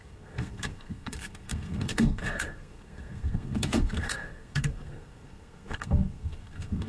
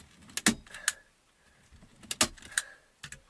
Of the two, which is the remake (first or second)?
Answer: first